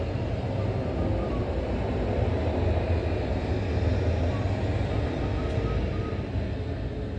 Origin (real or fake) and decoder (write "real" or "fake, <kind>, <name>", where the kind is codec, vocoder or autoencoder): real